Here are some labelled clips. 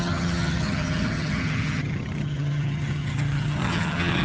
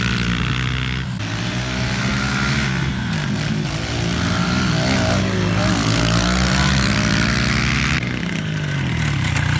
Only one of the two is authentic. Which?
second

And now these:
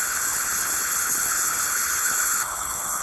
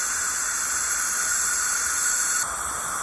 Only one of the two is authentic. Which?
second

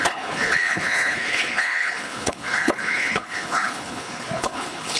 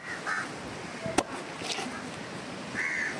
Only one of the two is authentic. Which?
second